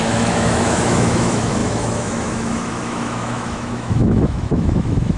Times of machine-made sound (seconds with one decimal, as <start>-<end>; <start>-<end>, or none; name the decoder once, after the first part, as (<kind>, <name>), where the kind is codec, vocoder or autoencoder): 0.0-5.2 (autoencoder, DAC-VAE)